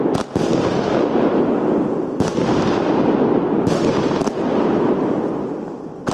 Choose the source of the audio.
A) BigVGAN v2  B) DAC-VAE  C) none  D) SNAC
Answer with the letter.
C